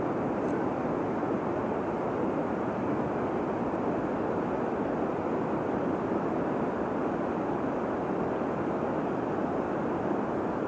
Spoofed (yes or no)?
no